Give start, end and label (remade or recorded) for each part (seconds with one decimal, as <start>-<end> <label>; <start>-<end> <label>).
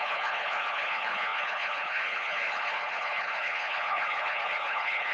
0.0-5.1 remade